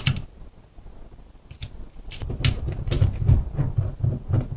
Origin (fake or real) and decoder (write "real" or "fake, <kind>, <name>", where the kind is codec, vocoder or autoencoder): real